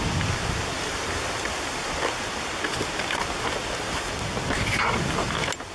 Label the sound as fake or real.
real